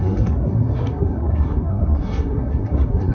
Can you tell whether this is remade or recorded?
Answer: remade